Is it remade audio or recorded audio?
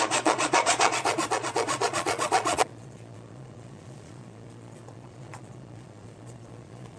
remade